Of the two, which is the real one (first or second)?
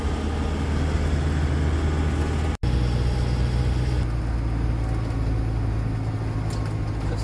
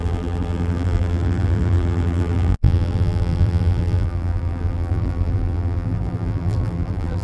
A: first